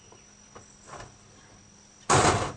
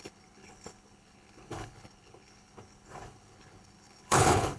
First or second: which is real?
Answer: first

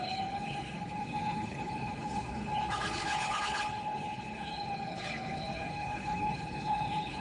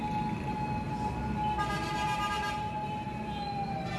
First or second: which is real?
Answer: second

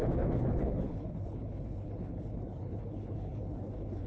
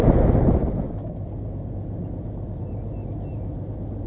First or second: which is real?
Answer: second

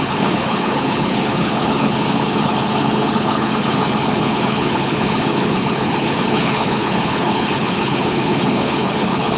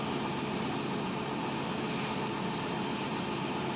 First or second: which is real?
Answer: second